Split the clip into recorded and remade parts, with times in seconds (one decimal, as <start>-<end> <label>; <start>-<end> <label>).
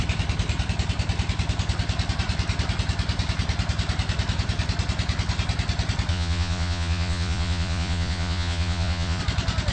0.0-6.1 recorded; 6.1-9.2 remade; 9.2-9.7 recorded